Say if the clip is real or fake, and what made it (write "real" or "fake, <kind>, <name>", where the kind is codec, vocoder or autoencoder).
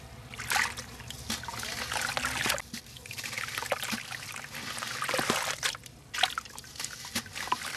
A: real